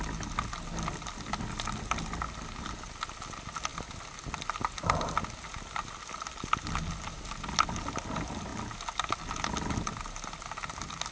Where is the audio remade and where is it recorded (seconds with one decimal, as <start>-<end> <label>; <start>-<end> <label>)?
0.0-11.1 recorded